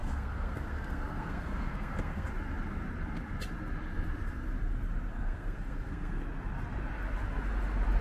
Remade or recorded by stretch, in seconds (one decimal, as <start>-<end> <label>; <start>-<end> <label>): 0.0-2.3 remade; 2.3-5.1 recorded; 5.1-6.2 remade; 6.2-8.0 recorded